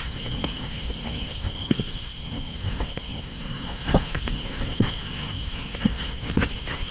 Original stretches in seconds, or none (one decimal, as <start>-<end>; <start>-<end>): none